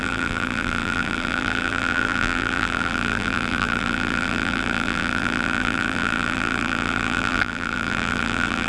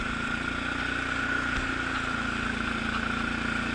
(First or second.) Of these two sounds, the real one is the second